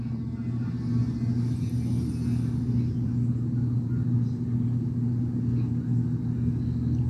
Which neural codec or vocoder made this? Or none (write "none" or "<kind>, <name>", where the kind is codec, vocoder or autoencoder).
none